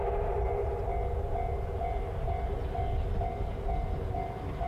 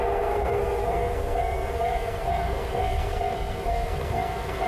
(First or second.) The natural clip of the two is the first